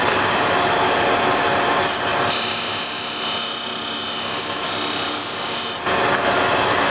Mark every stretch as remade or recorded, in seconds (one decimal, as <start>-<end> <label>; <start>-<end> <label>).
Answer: 0.0-6.9 recorded